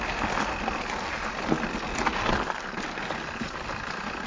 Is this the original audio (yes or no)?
yes